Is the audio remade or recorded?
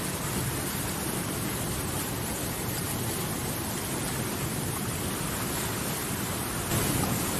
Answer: recorded